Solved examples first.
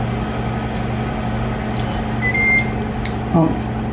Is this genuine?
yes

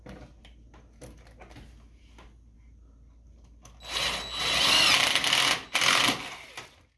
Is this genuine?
yes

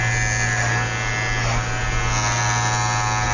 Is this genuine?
yes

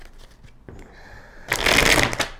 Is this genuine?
yes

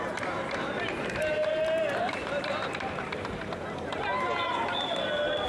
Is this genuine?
yes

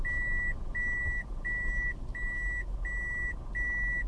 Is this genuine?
yes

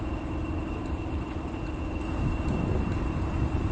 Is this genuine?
yes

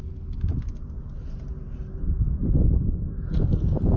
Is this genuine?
yes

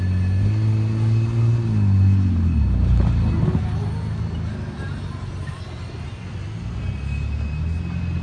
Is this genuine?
yes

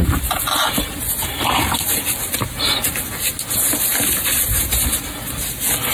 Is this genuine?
yes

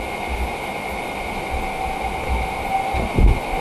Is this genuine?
yes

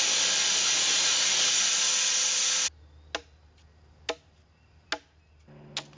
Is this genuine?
yes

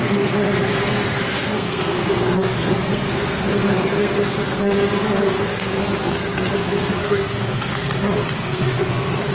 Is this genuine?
no